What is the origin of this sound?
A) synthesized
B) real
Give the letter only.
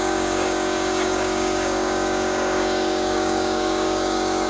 A